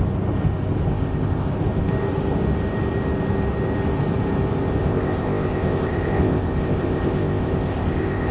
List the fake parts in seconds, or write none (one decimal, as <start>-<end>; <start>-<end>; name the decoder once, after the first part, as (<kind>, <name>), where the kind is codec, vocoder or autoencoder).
0.9-1.5 (codec, ZipCodec); 4.8-8.3

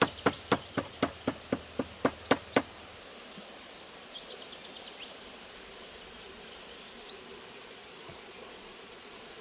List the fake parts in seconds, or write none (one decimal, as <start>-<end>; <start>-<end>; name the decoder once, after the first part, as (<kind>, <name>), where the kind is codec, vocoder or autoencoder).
8.0-9.4 (vocoder, Vocos)

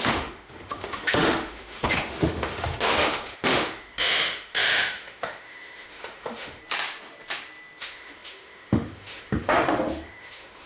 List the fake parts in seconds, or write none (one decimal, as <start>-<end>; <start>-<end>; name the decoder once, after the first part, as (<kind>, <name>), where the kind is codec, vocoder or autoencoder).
0.0-6.6 (autoencoder, DAC-VAE); 7.8-10.7

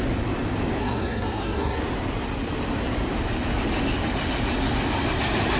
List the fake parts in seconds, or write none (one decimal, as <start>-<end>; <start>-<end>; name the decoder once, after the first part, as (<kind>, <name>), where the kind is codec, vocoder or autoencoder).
0.8-1.8 (codec, SNAC)

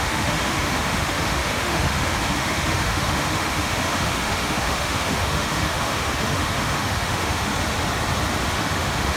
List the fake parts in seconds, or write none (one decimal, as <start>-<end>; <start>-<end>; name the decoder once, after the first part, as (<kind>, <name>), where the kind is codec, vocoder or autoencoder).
0.0-7.5 (autoencoder, DAC-VAE); 8.4-9.2

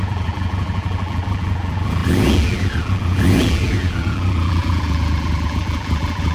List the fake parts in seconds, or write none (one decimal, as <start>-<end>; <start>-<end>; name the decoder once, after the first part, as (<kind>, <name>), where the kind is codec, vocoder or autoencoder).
0.0-6.3 (vocoder, BigVGAN v2)